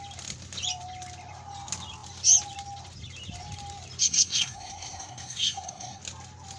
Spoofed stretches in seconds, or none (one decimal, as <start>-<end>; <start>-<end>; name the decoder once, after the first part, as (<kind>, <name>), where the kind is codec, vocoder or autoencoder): 4.0-6.0 (codec, SNAC)